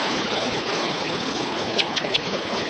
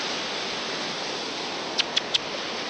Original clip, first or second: second